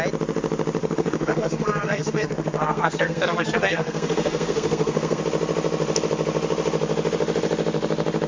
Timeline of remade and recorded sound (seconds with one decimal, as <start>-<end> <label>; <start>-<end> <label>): 0.0-0.8 recorded; 0.8-5.2 remade; 5.2-8.3 recorded